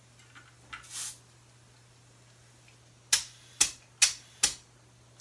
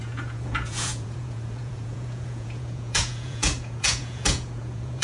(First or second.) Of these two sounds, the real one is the first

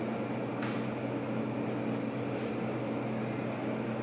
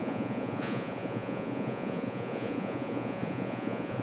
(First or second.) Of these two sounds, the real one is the first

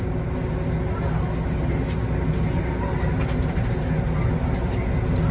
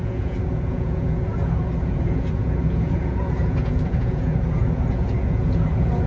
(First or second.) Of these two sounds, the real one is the first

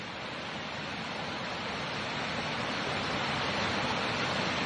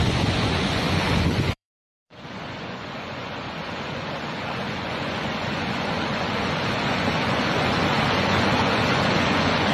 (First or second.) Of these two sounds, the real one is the first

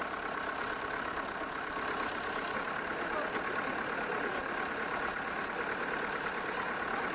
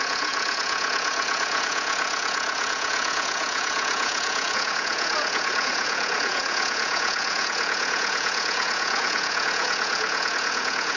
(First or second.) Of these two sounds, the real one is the first